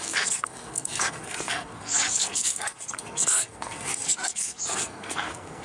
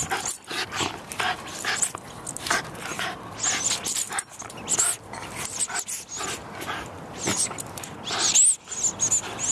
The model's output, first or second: first